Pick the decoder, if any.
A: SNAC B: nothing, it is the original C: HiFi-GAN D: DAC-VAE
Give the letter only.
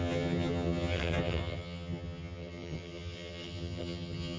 C